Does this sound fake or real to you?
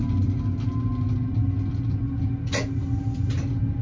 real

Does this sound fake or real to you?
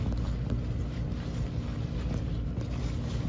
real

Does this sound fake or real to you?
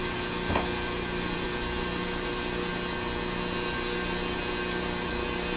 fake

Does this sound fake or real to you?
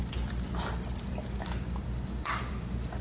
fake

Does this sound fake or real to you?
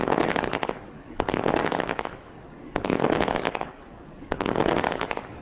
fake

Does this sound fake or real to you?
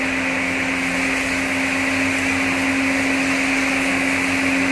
real